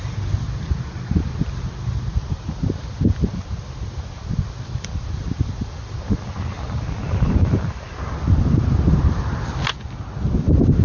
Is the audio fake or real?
real